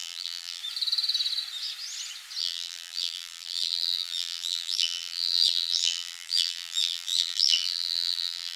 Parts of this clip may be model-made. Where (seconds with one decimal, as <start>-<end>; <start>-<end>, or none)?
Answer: 0.0-0.6; 2.4-8.6